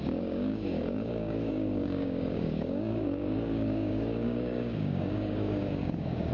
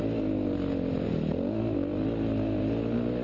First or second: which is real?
second